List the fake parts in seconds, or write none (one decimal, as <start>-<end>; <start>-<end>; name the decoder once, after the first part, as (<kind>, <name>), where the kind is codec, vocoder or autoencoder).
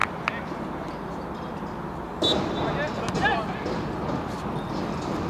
none